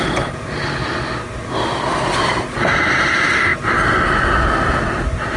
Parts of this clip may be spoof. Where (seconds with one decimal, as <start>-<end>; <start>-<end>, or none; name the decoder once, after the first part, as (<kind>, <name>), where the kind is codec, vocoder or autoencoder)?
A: none